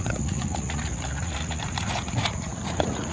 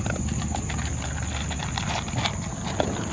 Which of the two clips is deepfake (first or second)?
first